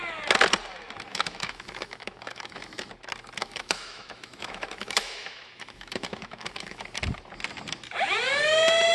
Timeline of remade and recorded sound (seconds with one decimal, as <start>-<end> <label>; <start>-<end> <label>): 0.0-1.1 recorded; 1.1-2.9 remade; 2.9-3.4 recorded; 3.4-6.8 remade; 6.8-8.9 recorded